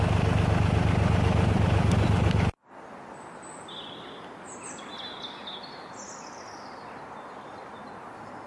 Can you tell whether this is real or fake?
real